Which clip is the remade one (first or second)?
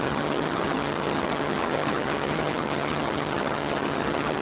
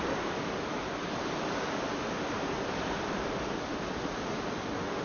first